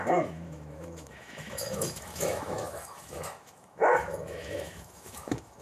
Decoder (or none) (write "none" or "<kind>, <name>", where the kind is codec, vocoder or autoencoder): autoencoder, DAC-VAE